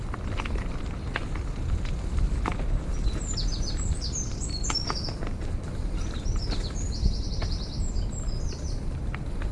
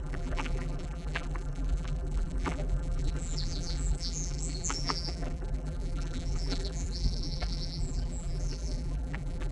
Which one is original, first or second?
first